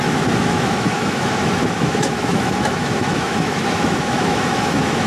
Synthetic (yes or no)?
yes